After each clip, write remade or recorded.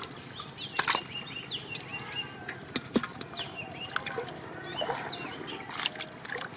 recorded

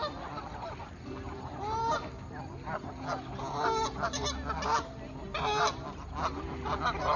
recorded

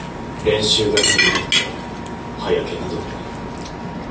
recorded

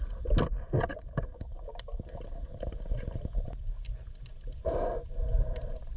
recorded